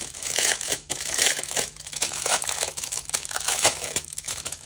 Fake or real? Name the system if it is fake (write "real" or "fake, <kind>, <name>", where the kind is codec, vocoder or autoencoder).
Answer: fake, autoencoder, DAC-VAE